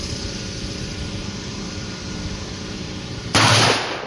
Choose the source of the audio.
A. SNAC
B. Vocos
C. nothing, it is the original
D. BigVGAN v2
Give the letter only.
D